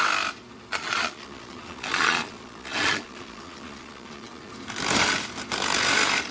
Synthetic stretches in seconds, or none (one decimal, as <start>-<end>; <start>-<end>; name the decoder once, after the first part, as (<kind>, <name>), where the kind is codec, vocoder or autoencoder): 0.7-4.5 (vocoder, Vocos)